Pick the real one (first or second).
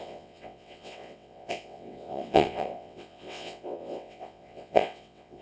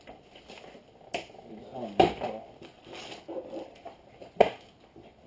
second